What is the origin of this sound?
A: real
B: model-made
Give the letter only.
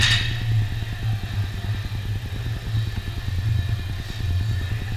A